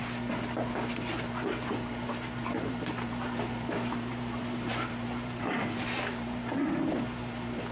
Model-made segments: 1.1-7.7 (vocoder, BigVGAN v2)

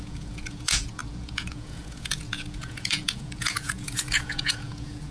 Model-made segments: 0.0-5.1 (vocoder, Vocos)

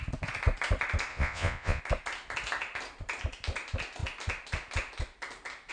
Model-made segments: 1.1-1.8 (vocoder, Vocos)

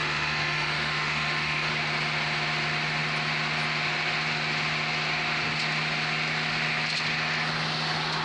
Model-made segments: 0.0-1.7 (autoencoder, DAC-VAE)

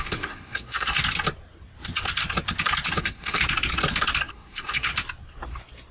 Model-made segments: 0.0-1.0 (codec, SNAC); 3.0-3.4; 4.3-4.9

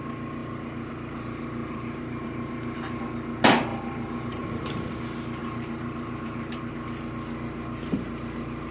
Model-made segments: 1.6-3.0 (vocoder, BigVGAN v2); 3.7-4.9; 5.4-6.7

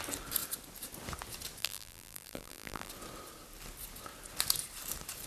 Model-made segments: 1.6-2.9 (vocoder, BigVGAN v2)

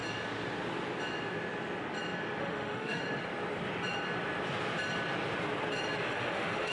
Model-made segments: 2.4-3.0 (autoencoder, DAC-VAE); 6.1-6.7